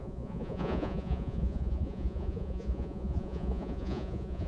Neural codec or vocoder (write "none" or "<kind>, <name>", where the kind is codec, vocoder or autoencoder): vocoder, Vocos